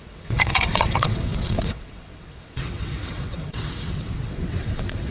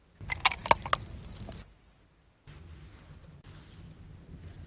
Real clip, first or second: second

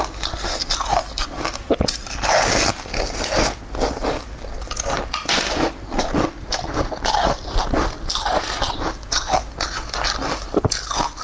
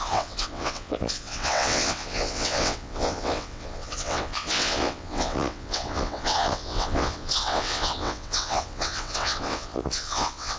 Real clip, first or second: first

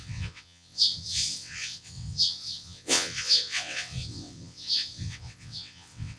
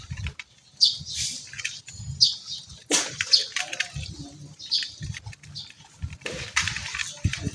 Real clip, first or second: second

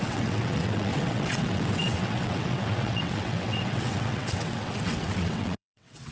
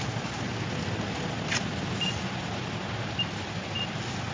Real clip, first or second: second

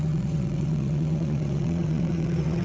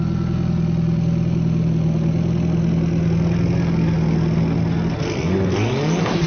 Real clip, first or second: second